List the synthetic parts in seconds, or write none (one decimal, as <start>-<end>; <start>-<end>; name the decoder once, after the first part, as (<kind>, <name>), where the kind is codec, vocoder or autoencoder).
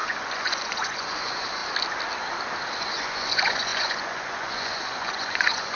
0.0-1.6 (vocoder, Vocos); 2.8-5.7